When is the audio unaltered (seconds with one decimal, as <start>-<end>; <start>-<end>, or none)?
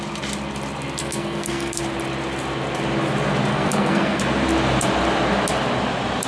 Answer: 0.0-1.0; 1.8-3.5; 4.2-6.3